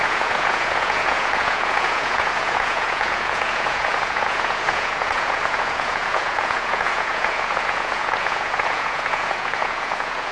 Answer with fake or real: fake